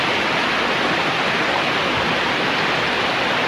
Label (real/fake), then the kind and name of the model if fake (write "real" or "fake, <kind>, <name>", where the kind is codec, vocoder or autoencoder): real